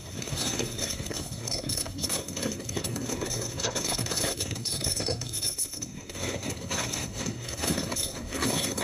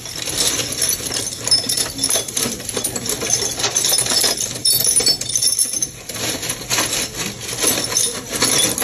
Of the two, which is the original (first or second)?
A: second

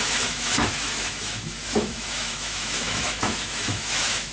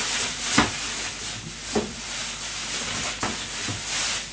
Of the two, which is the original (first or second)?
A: second